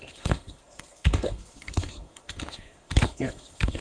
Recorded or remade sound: remade